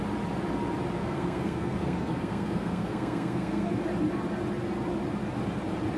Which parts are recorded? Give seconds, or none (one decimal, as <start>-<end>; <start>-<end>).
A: 0.0-1.0; 3.7-6.0